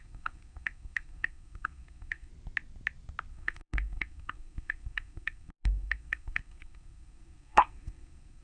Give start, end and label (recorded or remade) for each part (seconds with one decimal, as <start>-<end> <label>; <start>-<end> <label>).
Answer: 0.0-2.3 remade; 2.3-3.3 recorded; 3.3-8.4 remade